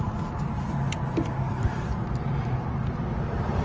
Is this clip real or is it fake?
real